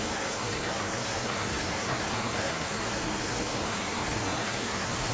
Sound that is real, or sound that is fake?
fake